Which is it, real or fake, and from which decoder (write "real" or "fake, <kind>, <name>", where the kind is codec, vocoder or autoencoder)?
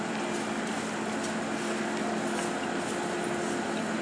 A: real